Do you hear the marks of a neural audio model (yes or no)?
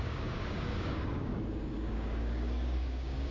yes